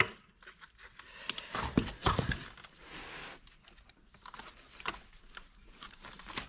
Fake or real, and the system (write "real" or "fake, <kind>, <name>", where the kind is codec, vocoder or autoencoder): real